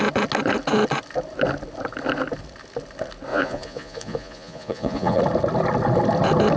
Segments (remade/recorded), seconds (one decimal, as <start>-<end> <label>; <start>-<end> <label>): 0.0-3.3 recorded; 3.3-5.2 remade; 5.2-6.6 recorded